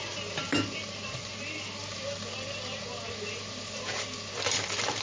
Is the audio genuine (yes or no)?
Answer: yes